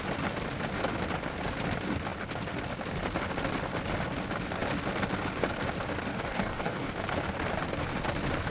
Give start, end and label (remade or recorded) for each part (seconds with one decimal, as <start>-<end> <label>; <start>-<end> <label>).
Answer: 0.0-6.1 recorded; 6.1-6.9 remade; 6.9-8.5 recorded